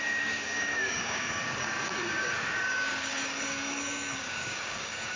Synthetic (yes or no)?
yes